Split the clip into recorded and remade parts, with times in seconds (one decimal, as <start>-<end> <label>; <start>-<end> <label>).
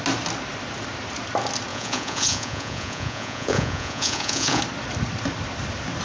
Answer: 0.0-1.7 recorded; 1.7-4.6 remade; 4.6-6.0 recorded